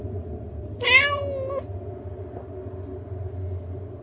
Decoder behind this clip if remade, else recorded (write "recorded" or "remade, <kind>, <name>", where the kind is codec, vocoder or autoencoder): recorded